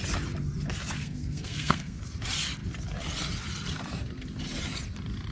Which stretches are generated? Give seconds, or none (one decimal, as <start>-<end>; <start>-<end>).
1.0-2.0